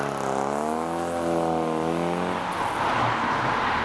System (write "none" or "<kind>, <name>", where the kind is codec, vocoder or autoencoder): none